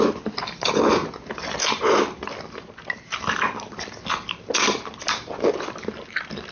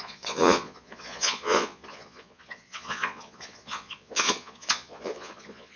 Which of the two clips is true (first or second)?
first